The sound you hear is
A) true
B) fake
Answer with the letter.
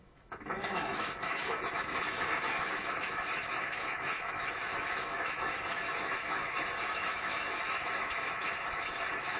B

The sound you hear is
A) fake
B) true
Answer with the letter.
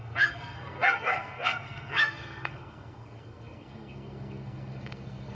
A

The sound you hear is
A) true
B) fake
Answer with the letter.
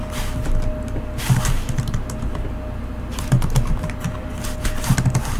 A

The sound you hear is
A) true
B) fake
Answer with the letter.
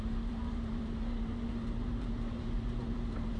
B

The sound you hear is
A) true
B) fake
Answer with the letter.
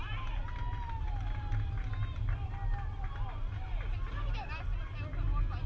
A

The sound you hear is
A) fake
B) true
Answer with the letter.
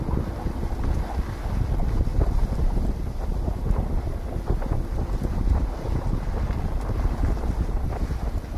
B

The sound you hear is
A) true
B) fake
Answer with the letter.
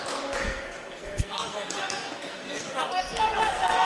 B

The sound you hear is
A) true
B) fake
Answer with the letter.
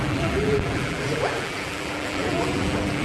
B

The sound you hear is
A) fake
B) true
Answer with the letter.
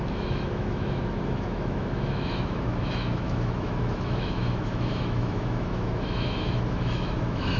A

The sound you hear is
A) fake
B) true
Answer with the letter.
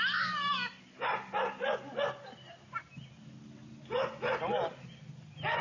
B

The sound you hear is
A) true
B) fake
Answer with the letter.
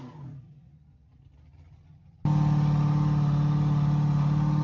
A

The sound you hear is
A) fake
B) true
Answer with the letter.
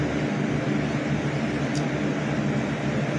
B